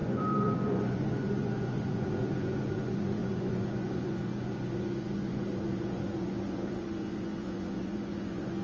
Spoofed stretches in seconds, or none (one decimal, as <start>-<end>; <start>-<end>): 0.0-8.6